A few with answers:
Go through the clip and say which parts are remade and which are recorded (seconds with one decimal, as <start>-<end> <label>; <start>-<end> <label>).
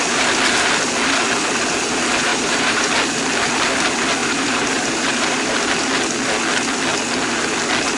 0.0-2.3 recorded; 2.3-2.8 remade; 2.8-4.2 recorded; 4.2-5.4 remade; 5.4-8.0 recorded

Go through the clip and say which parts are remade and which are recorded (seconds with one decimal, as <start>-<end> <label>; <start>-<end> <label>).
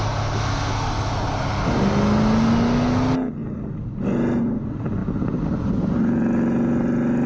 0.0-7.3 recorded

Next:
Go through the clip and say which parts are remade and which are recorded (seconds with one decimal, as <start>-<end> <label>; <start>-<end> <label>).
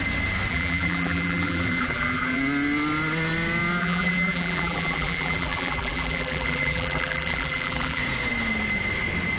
0.0-0.5 recorded; 0.5-2.4 remade; 2.4-3.8 recorded; 3.8-8.0 remade; 8.0-9.4 recorded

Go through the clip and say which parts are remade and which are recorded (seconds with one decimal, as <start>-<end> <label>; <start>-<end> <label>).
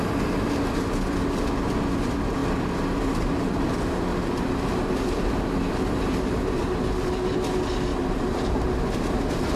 0.0-7.9 recorded; 7.9-8.8 remade; 8.8-9.6 recorded